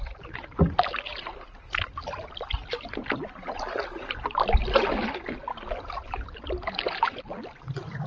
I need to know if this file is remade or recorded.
recorded